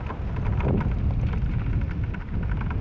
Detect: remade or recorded recorded